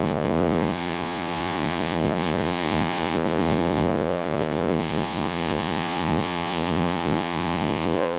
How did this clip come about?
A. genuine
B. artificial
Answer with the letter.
B